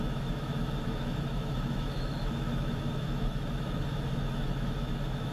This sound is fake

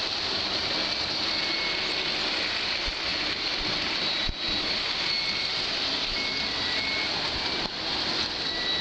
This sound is real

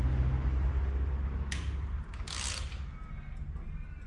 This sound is real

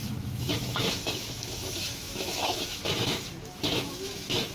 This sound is fake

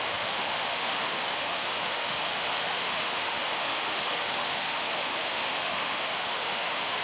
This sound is fake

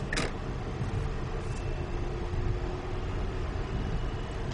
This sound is real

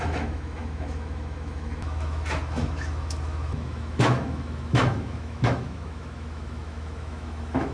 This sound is fake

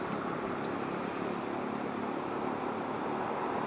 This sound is real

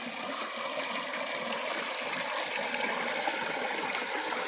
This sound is real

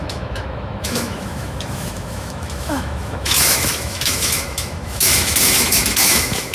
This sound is fake